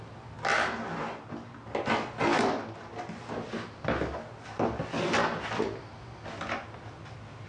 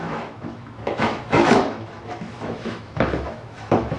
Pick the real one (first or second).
first